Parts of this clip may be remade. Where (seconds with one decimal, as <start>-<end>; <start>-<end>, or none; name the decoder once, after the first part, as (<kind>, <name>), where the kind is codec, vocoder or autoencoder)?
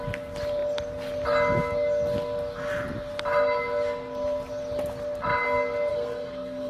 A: 5.9-6.7 (codec, SNAC)